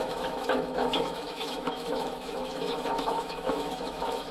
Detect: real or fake fake